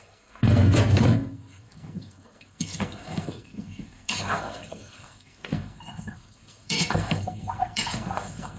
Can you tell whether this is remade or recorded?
remade